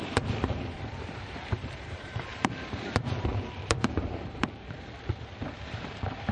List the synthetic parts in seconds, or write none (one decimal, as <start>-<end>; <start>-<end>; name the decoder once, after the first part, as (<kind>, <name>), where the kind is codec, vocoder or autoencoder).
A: 0.0-6.3 (vocoder, BigVGAN v2)